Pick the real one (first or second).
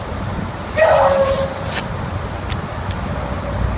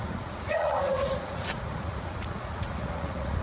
first